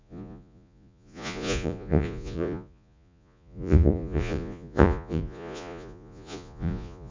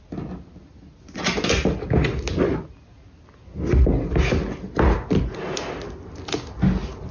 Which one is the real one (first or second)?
second